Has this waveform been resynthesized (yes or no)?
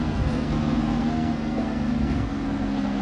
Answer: yes